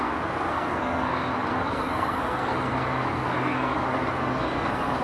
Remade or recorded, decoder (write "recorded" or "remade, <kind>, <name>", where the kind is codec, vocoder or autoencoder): remade, codec, SNAC